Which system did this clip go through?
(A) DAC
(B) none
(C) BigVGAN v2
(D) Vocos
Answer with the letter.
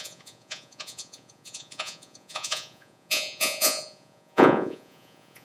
D